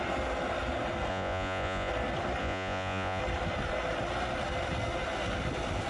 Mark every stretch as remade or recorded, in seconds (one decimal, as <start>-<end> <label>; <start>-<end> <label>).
0.0-1.1 recorded; 1.1-1.9 remade; 1.9-2.4 recorded; 2.4-3.2 remade; 3.2-5.9 recorded